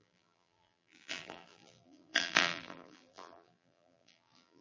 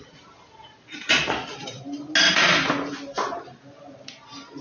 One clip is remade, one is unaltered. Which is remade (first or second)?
first